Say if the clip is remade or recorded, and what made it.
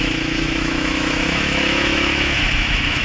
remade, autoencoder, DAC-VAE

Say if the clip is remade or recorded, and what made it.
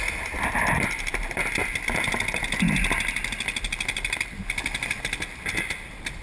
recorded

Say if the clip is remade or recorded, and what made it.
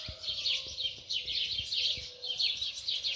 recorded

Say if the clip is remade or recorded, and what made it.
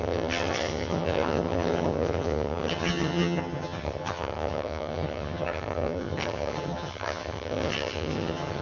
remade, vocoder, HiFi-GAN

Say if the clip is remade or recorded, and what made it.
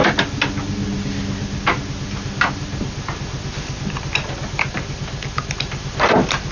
recorded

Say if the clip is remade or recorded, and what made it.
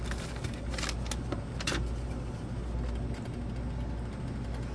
recorded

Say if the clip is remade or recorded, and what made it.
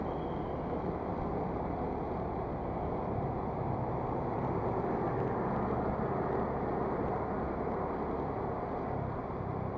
recorded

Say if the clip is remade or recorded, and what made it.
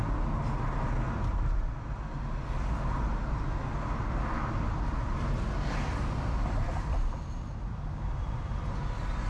recorded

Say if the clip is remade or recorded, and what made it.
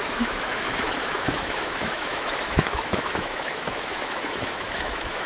remade, autoencoder, DAC-VAE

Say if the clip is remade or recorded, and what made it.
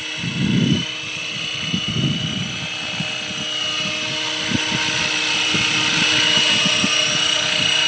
recorded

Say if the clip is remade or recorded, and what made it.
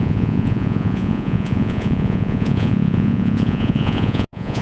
remade, vocoder, Vocos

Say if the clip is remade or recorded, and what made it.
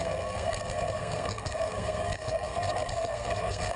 remade, codec, SNAC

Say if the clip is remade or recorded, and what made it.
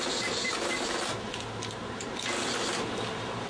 recorded